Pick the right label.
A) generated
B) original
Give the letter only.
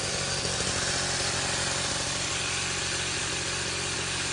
B